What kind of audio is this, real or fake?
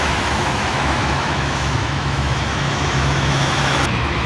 fake